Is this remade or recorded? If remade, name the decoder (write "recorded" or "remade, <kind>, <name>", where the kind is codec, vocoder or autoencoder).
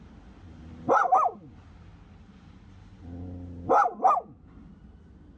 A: recorded